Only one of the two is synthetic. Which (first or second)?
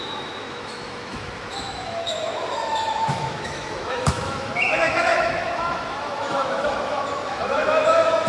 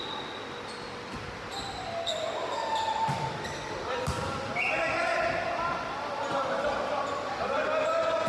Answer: first